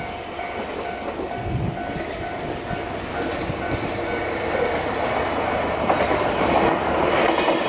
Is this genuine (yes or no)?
yes